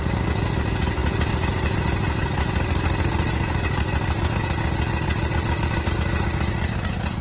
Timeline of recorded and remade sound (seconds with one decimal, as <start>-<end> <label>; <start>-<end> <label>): 0.0-7.2 recorded